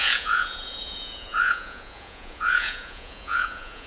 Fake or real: fake